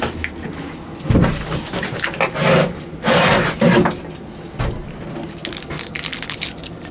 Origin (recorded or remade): recorded